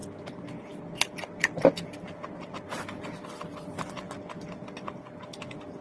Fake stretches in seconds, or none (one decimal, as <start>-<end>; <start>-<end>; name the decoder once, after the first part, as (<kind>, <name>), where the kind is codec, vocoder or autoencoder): none